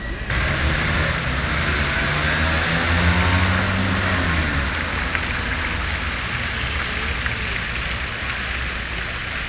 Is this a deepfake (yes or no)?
no